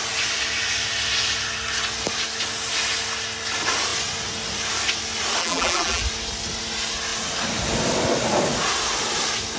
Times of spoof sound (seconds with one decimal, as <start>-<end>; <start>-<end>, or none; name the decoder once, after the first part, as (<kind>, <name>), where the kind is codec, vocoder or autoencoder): 5.4-6.0 (vocoder, BigVGAN v2)